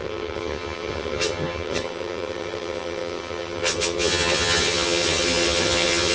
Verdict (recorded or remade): remade